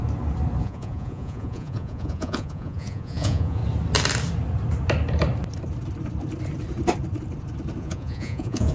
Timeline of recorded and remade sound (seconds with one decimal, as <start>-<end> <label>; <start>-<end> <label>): 0.0-0.6 recorded; 0.6-3.6 remade; 3.6-7.8 recorded; 7.8-8.7 remade